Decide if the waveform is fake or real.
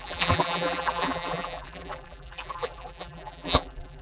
fake